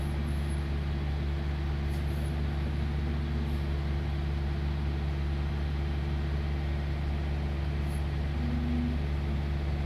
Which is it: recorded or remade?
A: recorded